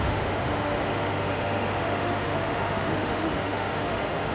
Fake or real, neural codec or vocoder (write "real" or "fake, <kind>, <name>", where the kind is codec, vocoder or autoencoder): fake, autoencoder, DAC-VAE